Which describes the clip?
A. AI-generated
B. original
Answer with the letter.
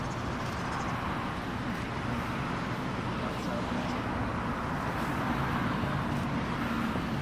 B